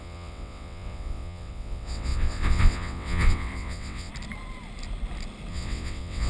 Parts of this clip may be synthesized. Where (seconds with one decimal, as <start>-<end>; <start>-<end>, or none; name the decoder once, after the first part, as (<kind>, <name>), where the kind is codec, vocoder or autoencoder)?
0.0-4.1 (vocoder, WaveNeXt); 5.5-6.3